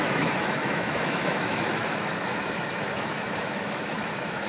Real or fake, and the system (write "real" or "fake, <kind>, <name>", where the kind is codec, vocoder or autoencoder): fake, autoencoder, DAC-VAE